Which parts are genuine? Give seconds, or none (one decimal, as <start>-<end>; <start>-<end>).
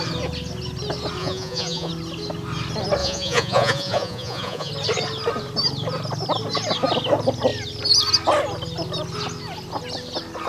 0.0-1.2; 1.9-3.0; 4.7-10.5